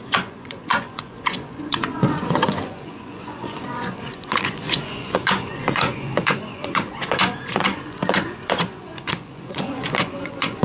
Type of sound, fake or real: fake